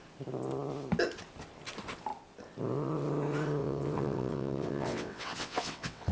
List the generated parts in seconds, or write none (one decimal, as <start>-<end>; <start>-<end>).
3.6-6.1